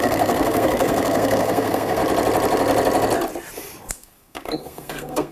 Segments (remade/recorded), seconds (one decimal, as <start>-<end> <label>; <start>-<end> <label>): 0.0-2.0 remade; 2.0-3.9 recorded; 3.9-5.3 remade